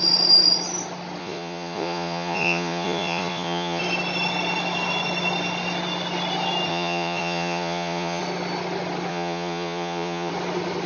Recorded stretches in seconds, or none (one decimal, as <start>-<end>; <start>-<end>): 0.0-1.2; 3.8-6.7; 8.2-9.1; 10.3-10.9